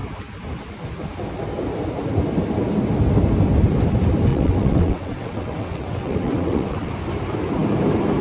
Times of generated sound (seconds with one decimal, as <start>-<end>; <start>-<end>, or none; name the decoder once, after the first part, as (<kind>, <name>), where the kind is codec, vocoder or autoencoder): 4.3-6.9 (vocoder, WaveNeXt)